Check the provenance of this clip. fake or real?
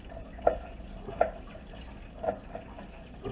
real